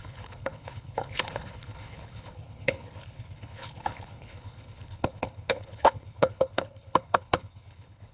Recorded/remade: remade